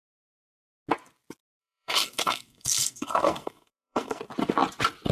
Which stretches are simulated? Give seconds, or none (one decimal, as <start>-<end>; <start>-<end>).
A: 1.6-4.2